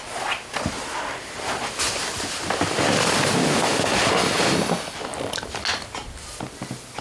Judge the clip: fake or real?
real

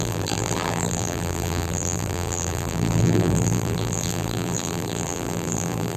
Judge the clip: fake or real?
fake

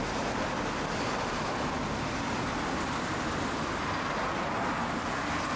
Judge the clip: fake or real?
real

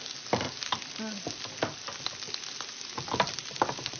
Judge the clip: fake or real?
real